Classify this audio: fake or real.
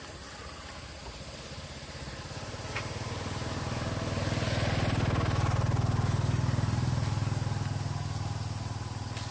real